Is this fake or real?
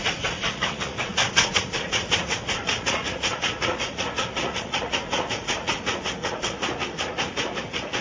fake